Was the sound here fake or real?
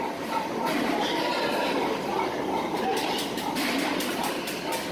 real